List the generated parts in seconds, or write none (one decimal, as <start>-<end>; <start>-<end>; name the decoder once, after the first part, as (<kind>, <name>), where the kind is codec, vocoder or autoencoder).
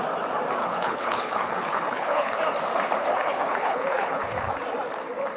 0.6-2.4 (codec, HILCodec); 3.0-4.5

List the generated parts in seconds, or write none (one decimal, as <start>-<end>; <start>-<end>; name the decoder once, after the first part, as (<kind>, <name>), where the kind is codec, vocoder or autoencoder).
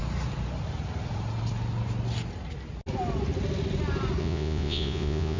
4.2-5.4 (vocoder, Vocos)